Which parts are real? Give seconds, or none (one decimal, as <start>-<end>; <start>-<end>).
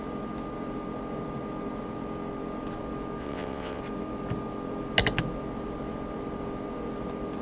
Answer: 0.0-3.2; 3.8-7.4